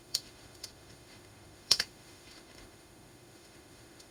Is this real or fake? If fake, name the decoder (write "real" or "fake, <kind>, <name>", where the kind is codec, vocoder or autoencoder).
fake, autoencoder, DAC-VAE